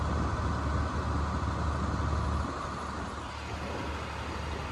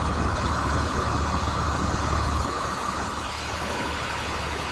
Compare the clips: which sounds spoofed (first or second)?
second